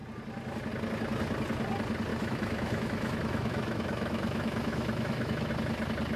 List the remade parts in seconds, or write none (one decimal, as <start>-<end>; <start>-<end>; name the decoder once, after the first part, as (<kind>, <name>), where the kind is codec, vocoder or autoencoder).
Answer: 2.1-5.5 (autoencoder, DAC-VAE)